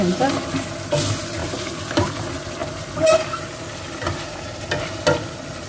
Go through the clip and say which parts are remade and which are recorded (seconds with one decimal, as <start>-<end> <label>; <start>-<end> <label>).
0.0-5.7 recorded